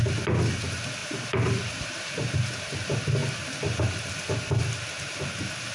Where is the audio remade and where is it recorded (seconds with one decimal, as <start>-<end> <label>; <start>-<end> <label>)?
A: 0.0-1.0 recorded; 1.0-2.5 remade; 2.5-5.7 recorded